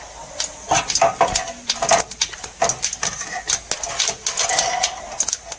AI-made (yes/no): no